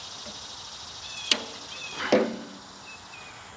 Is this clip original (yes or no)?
yes